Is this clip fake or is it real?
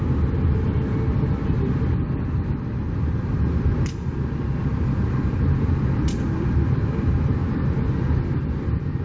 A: real